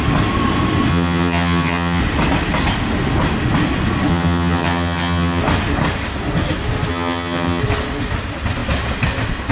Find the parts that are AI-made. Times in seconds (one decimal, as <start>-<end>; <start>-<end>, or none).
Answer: 0.9-2.0; 4.1-5.4; 6.9-7.6